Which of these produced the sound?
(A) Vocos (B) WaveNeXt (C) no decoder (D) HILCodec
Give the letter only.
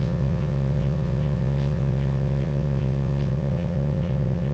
B